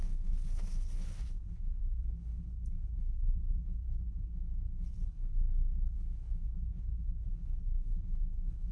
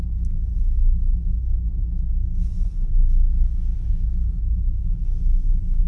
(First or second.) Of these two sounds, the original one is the second